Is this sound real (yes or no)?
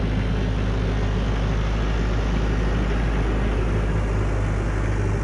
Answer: yes